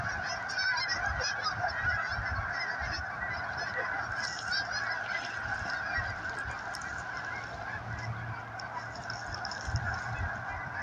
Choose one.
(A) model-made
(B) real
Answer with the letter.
B